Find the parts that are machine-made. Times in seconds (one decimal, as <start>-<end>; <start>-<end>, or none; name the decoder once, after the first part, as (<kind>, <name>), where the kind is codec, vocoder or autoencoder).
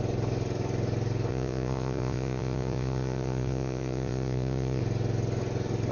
1.3-4.8 (vocoder, Vocos)